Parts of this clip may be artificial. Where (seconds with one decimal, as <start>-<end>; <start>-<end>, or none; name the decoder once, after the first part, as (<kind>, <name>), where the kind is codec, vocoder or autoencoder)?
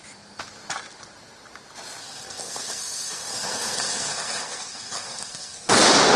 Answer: 2.0-5.7 (codec, SNAC)